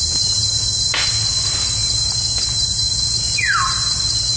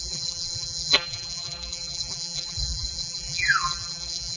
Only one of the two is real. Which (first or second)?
first